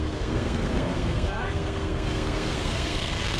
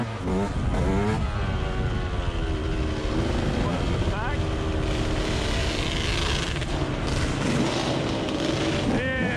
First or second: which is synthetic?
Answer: first